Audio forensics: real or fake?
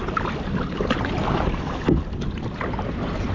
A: real